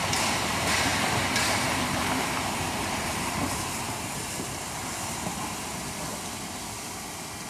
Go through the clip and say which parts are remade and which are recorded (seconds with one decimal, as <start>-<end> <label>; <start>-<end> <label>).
0.0-7.5 recorded